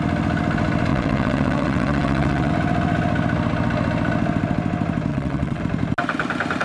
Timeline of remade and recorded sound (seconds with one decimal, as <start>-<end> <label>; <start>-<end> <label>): 0.0-0.9 recorded; 0.9-2.5 remade; 2.5-5.1 recorded; 5.1-5.6 remade; 5.6-6.6 recorded